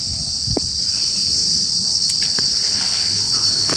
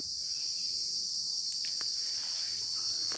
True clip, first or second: second